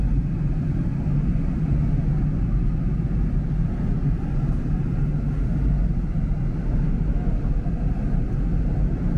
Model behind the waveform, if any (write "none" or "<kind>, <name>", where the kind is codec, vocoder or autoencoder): none